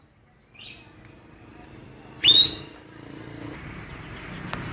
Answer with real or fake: real